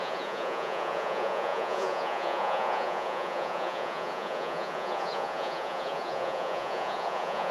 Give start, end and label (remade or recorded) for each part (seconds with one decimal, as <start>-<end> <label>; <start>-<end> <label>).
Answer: 0.0-7.5 remade